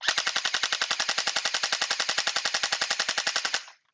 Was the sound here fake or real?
real